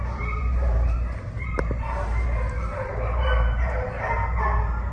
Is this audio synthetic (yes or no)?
yes